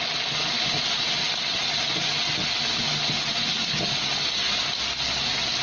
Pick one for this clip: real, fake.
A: real